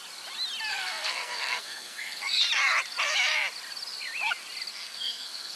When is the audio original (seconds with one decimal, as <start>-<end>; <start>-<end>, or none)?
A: 0.0-0.7; 2.4-4.7